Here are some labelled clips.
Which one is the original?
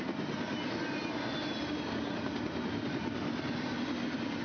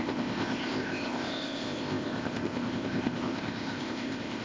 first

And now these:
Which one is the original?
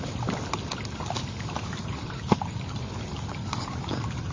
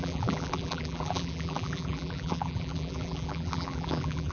first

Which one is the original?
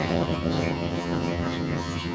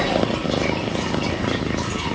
second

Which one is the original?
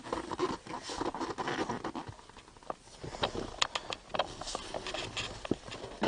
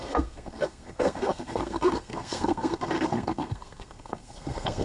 first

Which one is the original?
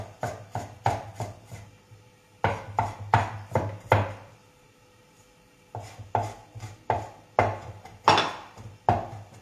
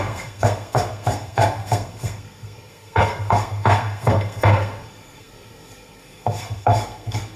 first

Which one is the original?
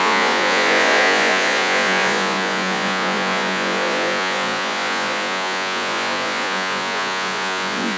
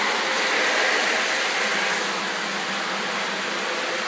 second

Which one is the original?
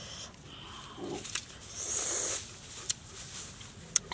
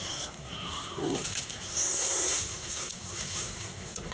first